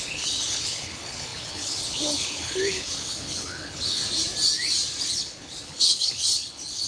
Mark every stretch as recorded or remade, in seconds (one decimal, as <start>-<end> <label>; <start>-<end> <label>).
0.0-4.0 remade; 4.0-5.0 recorded; 5.0-6.9 remade